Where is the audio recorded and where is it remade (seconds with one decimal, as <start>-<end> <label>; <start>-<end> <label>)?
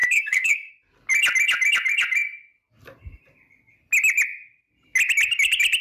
0.0-0.7 remade; 0.7-5.8 recorded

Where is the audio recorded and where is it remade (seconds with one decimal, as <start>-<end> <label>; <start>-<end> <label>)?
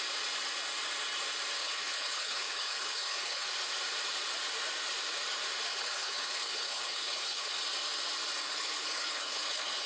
0.0-1.6 recorded; 1.6-3.5 remade; 3.5-5.7 recorded; 5.7-7.6 remade; 7.6-8.4 recorded; 8.4-9.9 remade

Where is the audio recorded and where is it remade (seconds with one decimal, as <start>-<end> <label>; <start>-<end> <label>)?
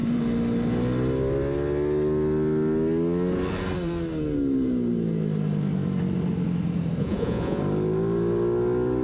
0.0-7.0 recorded; 7.0-7.6 remade; 7.6-9.0 recorded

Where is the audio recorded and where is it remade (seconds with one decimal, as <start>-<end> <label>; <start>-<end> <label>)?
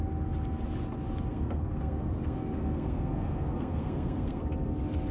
0.0-1.3 recorded; 1.3-4.4 remade; 4.4-5.1 recorded